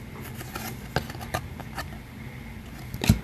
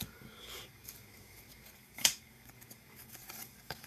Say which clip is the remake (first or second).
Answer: second